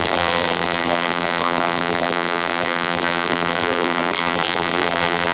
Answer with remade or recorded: remade